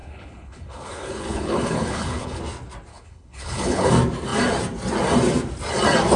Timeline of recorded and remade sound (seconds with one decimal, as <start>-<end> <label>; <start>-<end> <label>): 0.0-2.4 remade; 2.4-2.9 recorded; 2.9-3.9 remade; 3.9-6.2 recorded